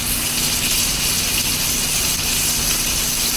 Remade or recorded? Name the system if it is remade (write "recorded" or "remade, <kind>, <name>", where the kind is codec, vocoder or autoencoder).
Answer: recorded